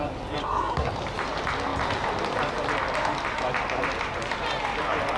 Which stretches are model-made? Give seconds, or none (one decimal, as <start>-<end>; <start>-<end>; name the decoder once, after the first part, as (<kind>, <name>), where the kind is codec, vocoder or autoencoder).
0.4-0.9 (codec, SNAC)